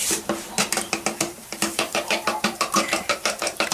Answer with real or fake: fake